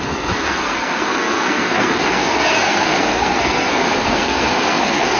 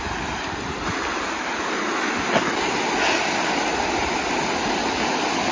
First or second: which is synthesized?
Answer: first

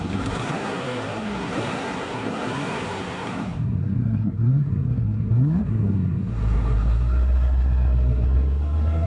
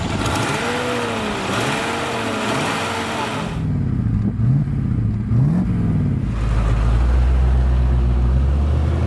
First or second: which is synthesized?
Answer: first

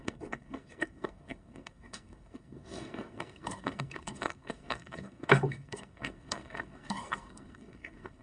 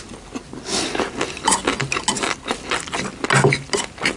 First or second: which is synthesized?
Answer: first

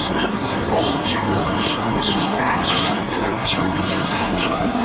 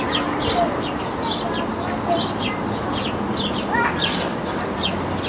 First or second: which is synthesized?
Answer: first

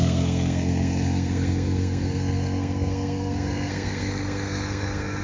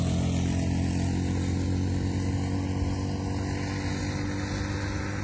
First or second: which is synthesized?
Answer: first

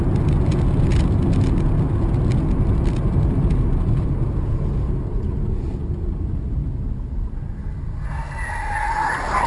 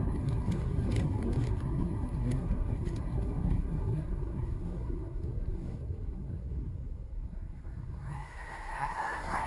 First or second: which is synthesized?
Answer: second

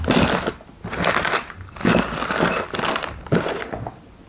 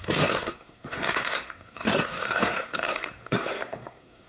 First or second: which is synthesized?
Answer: second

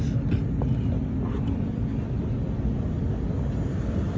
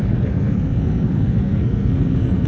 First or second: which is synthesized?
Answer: second